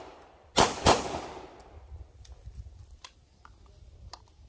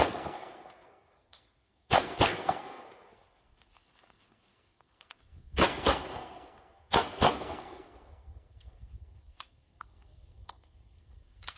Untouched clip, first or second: first